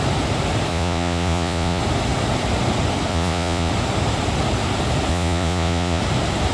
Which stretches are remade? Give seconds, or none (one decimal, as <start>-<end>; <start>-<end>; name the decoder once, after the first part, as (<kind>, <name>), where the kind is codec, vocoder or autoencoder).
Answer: 0.7-1.8 (vocoder, Vocos); 3.1-3.7; 5.1-6.0